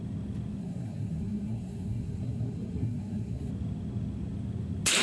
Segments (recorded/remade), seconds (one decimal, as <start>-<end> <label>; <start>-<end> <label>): 0.0-0.6 recorded; 0.6-3.5 remade; 3.5-5.0 recorded